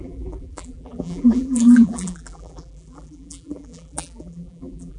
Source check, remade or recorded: remade